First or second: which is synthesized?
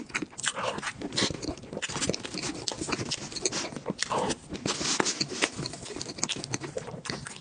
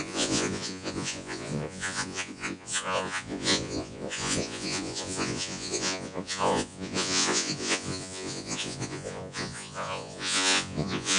second